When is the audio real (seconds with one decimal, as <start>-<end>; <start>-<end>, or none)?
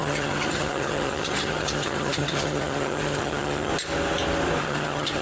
3.7-4.6